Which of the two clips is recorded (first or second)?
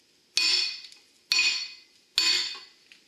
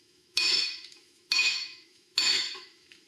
first